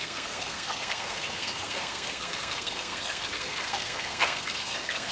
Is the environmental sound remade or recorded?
remade